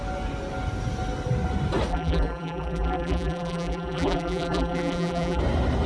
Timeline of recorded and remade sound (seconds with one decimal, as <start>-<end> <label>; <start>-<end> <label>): 0.0-1.9 recorded; 1.9-5.4 remade; 5.4-5.9 recorded